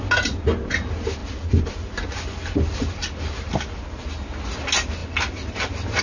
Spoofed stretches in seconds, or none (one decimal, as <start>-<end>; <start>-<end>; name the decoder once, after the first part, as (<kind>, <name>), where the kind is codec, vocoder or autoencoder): none